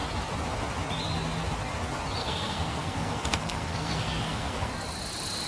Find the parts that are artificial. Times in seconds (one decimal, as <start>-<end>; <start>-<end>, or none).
2.2-4.7